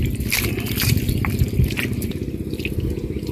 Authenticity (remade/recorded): recorded